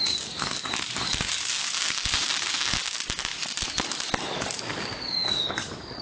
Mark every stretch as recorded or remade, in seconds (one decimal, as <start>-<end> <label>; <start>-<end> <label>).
0.0-3.3 remade; 3.3-3.9 recorded; 3.9-6.0 remade